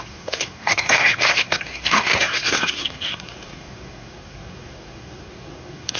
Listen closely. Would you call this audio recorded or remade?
remade